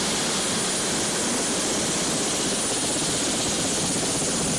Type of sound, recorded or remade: recorded